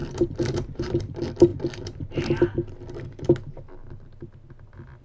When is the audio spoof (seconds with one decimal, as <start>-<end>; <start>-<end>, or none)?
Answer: 0.0-1.0

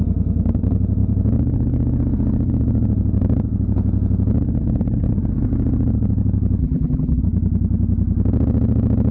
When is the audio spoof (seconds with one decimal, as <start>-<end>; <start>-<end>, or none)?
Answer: 6.6-7.2

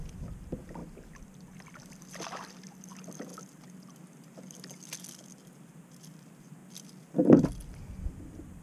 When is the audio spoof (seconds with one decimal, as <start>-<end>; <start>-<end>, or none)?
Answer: 0.0-3.3; 5.7-6.6; 7.6-8.6

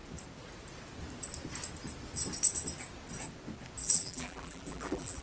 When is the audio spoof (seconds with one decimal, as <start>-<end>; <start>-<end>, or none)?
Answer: 3.8-5.2

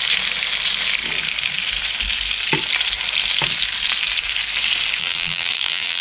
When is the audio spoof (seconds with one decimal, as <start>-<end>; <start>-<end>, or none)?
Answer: 5.0-6.0